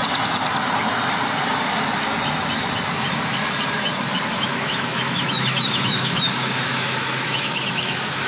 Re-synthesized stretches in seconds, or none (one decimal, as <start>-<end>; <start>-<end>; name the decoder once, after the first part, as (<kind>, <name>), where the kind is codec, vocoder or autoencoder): 4.3-8.3 (autoencoder, DAC-VAE)